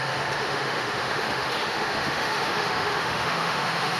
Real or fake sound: fake